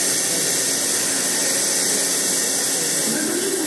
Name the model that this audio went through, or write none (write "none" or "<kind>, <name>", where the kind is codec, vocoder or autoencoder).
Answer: none